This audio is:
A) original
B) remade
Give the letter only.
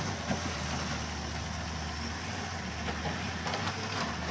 A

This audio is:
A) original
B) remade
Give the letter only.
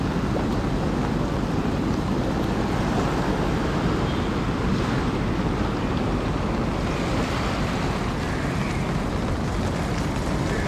A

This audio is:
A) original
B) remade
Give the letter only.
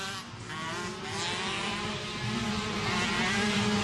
A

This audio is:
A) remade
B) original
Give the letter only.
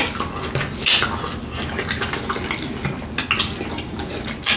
B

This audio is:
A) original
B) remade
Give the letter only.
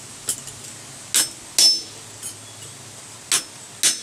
A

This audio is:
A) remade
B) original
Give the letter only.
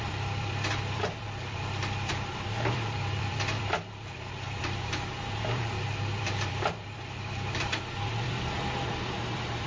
A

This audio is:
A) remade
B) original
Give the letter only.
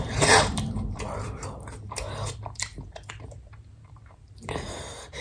A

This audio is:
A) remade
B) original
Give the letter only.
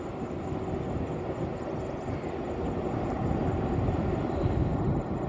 B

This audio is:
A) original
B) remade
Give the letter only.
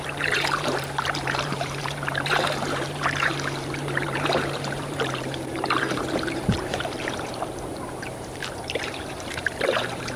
B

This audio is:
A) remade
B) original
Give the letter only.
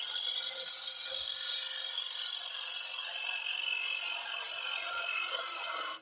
B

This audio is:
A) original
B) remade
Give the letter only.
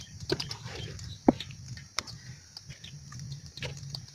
B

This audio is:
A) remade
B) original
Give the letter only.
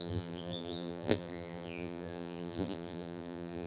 A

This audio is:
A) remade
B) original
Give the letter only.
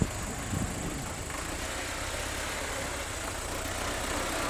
B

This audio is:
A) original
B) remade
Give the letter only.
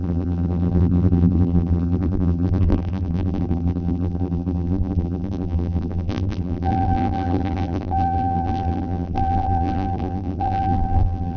B